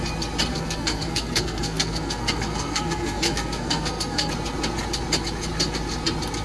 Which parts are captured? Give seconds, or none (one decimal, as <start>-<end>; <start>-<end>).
0.0-0.5; 4.3-6.4

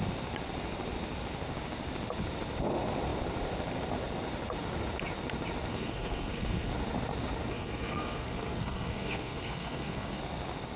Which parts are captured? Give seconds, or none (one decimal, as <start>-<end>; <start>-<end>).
0.0-5.7; 6.7-7.5; 10.2-10.8

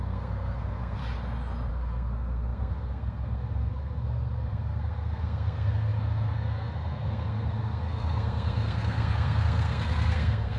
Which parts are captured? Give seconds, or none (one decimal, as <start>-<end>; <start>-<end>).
1.0-1.7

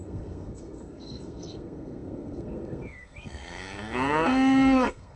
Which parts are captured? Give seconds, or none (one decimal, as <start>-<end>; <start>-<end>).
none

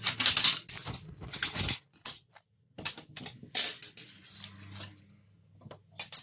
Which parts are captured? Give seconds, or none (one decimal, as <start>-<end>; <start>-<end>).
0.0-6.2

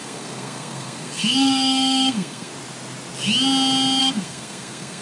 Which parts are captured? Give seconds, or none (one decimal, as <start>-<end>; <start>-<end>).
2.5-4.0

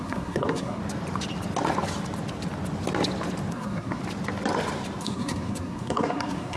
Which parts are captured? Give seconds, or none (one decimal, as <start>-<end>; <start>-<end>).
0.8-3.5; 4.0-5.0

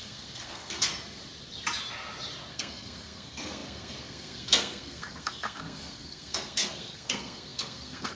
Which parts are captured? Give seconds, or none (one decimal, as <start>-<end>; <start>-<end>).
0.9-2.5